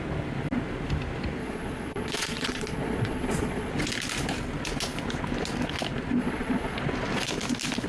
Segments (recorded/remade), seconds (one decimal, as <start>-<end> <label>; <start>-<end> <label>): 0.0-1.4 recorded; 1.4-3.7 remade; 3.7-6.2 recorded; 6.2-6.8 remade; 6.8-7.9 recorded